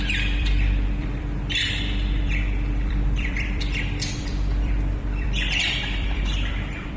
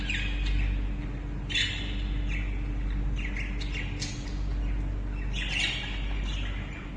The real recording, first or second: second